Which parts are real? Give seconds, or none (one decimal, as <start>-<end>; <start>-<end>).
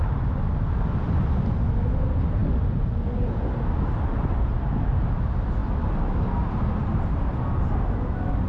0.0-8.5